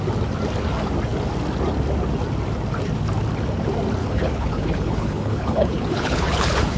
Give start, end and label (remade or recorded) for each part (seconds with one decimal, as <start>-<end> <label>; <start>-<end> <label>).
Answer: 0.0-4.0 recorded; 4.0-6.8 remade